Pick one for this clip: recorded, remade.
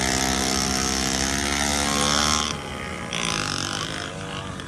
recorded